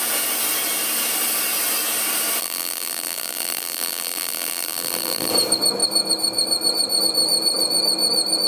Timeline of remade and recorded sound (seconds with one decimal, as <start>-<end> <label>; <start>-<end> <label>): 0.0-2.4 recorded; 2.4-5.3 remade; 5.3-8.5 recorded